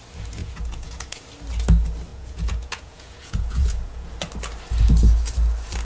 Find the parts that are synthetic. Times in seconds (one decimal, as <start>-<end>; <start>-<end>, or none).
0.4-1.2; 2.1-4.1

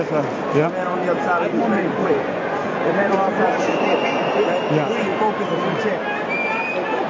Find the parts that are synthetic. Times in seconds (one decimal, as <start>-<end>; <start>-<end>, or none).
2.0-4.2

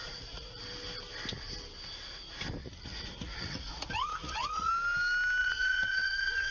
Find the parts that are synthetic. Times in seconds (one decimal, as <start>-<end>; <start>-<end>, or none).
0.0-0.6; 2.6-4.7; 5.4-6.5